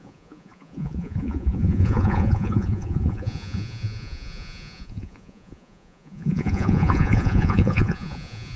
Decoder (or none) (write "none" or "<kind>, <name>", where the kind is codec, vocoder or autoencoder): vocoder, Vocos